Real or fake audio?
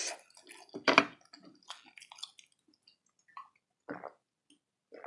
real